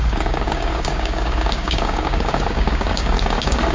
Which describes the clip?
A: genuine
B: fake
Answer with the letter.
B